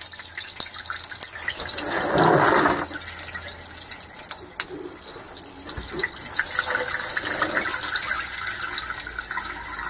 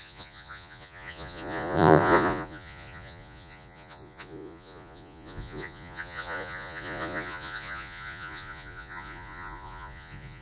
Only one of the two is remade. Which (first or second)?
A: second